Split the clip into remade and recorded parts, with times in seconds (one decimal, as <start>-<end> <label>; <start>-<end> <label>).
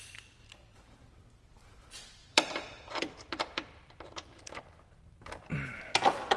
0.0-2.2 recorded; 2.2-4.6 remade; 4.6-6.4 recorded